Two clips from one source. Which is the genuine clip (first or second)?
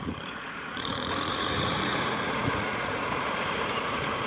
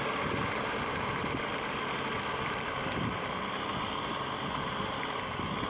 second